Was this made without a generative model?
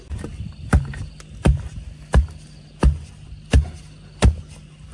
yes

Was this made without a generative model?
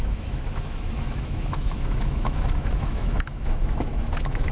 no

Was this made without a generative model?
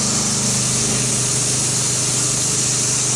yes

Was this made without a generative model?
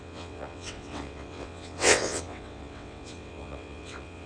no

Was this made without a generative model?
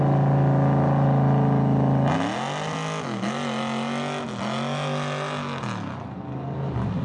yes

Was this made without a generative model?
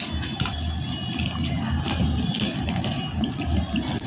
yes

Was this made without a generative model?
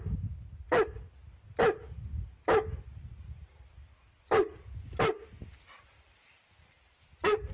yes